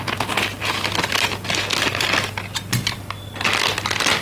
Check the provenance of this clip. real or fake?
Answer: real